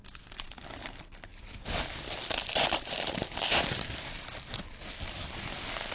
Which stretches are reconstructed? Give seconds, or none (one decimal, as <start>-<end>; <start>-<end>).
none